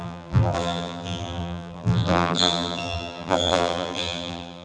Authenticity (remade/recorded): remade